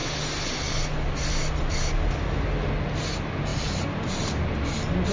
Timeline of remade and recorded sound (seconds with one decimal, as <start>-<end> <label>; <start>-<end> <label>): 0.0-3.5 recorded; 3.5-4.1 remade; 4.1-5.1 recorded